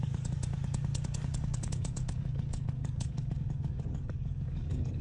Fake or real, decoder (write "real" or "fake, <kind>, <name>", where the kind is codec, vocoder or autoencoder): fake, codec, DAC